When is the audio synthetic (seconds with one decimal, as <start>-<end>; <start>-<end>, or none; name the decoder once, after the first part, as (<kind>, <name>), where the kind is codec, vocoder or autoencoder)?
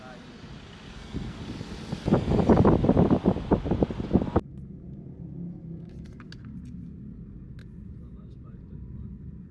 0.9-1.4 (codec, SNAC)